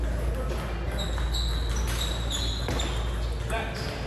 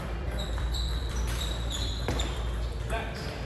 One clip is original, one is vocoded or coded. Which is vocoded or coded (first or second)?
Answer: second